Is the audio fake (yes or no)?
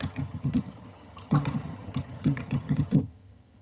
yes